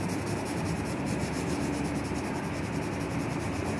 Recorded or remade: recorded